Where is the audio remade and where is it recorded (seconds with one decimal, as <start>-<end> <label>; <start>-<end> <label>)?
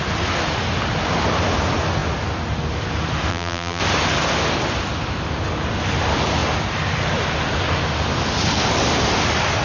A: 0.0-3.3 recorded; 3.3-3.8 remade; 3.8-9.6 recorded